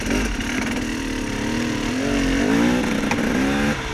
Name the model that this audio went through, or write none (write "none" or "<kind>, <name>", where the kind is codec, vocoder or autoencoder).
none